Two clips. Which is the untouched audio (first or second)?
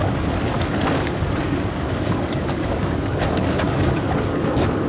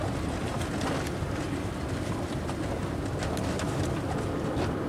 second